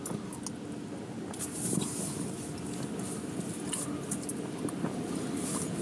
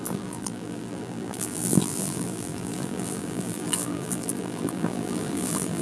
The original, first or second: first